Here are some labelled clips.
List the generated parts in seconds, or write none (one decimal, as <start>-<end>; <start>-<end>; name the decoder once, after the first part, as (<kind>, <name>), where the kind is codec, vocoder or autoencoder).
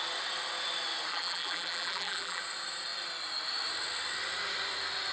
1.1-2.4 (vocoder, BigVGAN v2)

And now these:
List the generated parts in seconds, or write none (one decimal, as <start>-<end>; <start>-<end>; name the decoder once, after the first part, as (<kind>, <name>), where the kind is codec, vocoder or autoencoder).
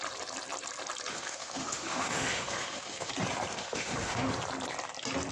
1.1-3.1 (autoencoder, DAC-VAE); 3.5-4.3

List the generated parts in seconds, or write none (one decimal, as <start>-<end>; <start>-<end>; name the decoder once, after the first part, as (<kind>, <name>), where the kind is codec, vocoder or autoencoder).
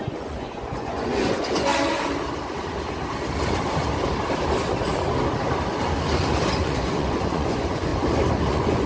0.0-1.7 (vocoder, Vocos); 6.6-7.9; 8.5-8.9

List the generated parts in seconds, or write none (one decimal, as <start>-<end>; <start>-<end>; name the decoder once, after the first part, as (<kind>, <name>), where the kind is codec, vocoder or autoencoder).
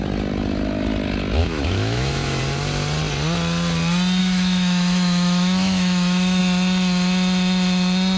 1.4-2.4 (autoencoder, DAC-VAE); 4.2-6.4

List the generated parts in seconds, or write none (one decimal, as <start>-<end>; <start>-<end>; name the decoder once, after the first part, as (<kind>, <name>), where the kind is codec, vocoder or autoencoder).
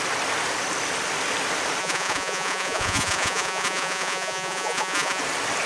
1.8-5.2 (vocoder, Vocos)